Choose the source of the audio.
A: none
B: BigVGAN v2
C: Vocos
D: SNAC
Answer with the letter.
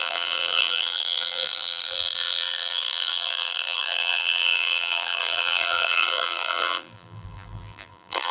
B